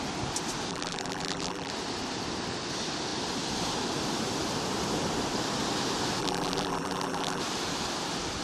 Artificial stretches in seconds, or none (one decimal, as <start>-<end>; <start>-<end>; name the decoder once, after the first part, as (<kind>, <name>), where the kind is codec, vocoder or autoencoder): 0.7-1.7 (vocoder, BigVGAN v2); 6.2-7.4